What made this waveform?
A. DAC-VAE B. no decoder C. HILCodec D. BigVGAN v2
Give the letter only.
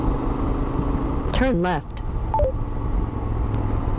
B